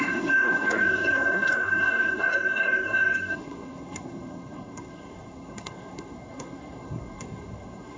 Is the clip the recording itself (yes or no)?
no